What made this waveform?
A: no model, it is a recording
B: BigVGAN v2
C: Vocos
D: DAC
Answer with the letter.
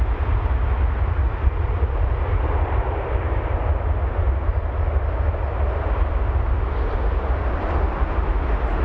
A